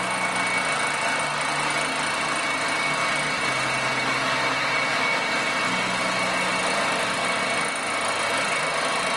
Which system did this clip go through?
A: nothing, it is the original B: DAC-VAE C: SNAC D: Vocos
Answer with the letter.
A